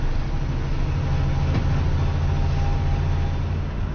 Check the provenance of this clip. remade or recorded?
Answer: recorded